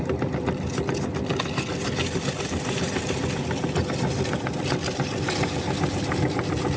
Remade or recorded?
recorded